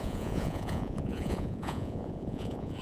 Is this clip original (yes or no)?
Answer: no